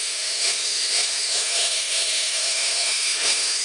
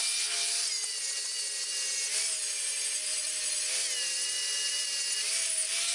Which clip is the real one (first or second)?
second